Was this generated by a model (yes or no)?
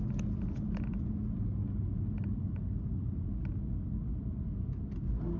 no